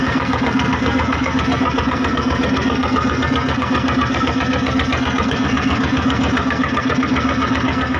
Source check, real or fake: fake